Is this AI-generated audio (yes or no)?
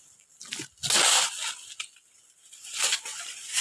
no